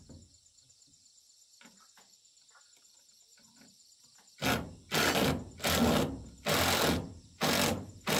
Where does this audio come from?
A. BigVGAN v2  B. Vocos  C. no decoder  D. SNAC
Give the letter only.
C